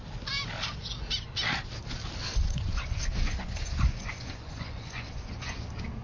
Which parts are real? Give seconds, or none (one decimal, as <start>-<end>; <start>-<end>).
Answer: 0.0-2.4; 5.6-6.0